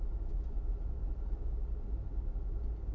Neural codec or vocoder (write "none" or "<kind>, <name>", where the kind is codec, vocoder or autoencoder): none